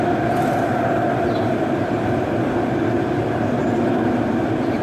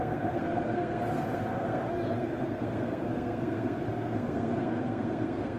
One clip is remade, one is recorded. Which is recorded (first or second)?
first